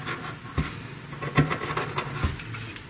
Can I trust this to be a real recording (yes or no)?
yes